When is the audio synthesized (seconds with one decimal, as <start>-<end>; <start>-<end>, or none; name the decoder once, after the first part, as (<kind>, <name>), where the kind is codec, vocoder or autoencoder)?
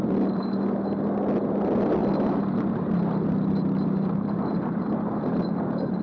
none